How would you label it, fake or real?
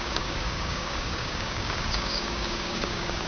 fake